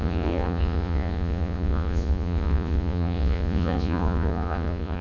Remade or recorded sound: remade